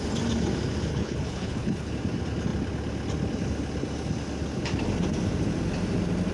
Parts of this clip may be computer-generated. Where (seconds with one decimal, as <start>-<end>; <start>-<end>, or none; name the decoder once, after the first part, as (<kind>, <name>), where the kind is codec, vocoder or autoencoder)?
0.9-1.9 (codec, HILCodec)